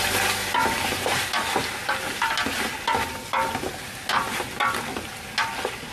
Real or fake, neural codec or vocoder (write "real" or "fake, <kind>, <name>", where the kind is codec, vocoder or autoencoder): real